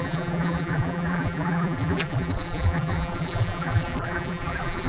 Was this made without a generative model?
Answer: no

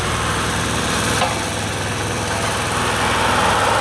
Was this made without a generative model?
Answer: yes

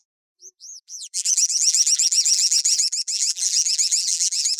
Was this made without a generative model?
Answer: no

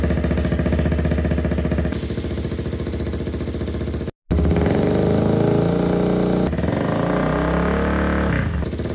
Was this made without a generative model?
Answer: yes